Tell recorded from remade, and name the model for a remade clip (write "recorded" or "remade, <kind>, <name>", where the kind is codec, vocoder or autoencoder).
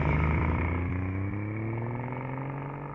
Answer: recorded